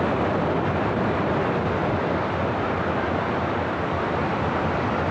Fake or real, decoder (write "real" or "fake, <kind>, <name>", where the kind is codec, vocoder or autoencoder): fake, vocoder, BigVGAN v2